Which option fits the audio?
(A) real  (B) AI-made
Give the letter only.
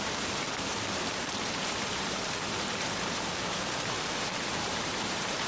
B